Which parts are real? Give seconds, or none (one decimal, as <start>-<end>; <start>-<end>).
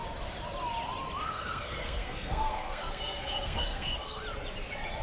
0.0-1.2; 4.2-5.0